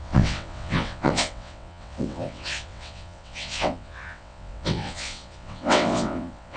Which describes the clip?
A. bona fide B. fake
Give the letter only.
B